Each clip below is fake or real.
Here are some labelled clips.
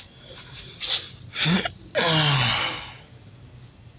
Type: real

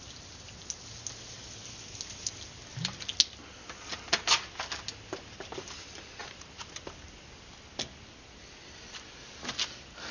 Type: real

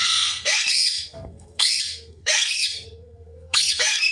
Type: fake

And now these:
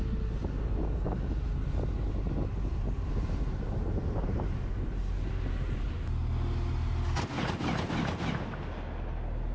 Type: real